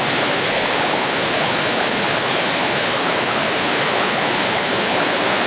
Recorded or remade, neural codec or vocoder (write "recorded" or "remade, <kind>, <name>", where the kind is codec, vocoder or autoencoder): remade, codec, HILCodec